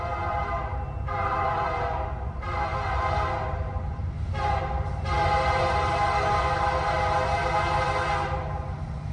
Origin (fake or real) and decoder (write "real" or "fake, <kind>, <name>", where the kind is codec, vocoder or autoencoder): real